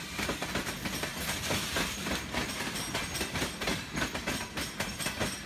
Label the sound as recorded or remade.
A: recorded